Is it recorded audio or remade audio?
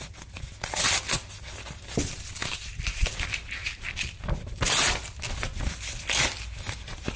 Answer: recorded